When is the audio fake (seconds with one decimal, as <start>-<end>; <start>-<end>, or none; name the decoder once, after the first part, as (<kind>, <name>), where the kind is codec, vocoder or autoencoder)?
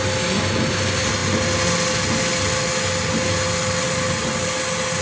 none